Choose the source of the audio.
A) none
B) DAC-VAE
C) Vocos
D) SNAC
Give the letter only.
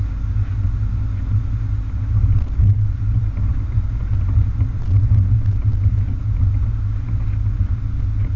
A